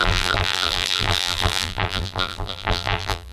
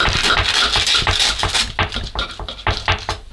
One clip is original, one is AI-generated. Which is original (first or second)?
second